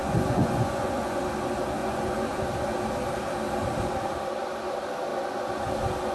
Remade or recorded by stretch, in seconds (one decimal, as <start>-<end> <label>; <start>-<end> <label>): 0.0-1.2 remade; 1.2-1.8 recorded; 1.8-2.4 remade; 2.4-6.1 recorded